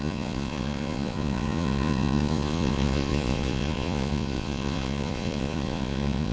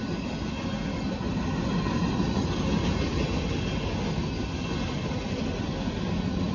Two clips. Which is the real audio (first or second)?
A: second